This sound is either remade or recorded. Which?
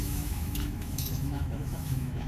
remade